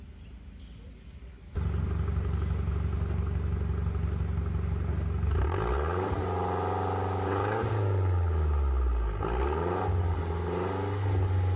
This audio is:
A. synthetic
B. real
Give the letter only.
B